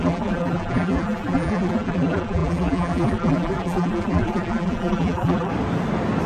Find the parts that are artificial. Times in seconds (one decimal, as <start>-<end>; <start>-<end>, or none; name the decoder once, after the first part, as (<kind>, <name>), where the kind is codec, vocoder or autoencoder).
0.0-5.5 (vocoder, BigVGAN v2)